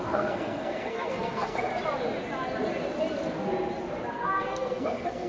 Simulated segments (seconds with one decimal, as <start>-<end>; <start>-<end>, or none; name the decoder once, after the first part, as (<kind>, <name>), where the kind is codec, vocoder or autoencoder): 0.0-1.7 (codec, SNAC); 4.1-5.3